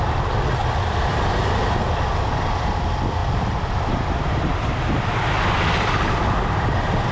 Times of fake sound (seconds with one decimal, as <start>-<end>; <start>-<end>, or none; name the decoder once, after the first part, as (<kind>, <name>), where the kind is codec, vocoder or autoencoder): 0.0-7.1 (vocoder, BigVGAN v2)